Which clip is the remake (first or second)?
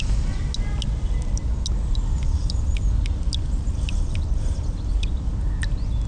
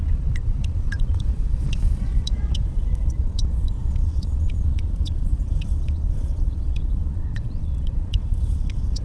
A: second